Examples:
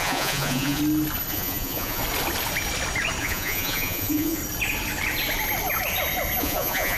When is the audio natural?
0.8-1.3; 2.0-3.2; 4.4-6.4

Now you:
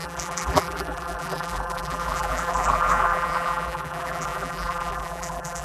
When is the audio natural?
none

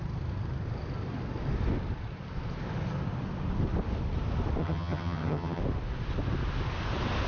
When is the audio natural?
0.0-4.6; 5.6-7.3

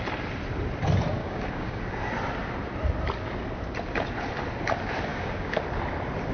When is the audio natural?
0.0-1.2; 1.8-5.1; 5.6-6.3

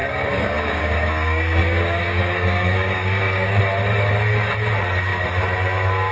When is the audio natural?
3.6-6.1

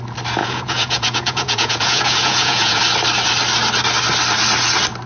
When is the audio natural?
0.0-0.4; 2.8-5.1

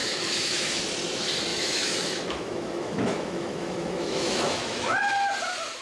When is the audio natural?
0.8-1.5; 5.0-5.8